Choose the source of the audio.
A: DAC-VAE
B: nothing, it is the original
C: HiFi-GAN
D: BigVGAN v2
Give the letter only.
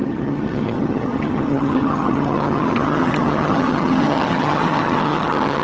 C